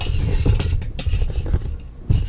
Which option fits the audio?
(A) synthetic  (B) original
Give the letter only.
A